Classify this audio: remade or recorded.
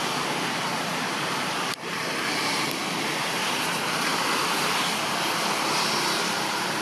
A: recorded